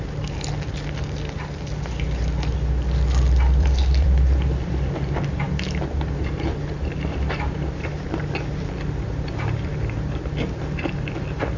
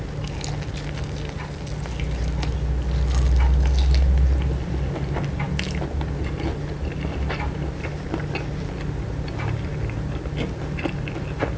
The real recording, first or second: second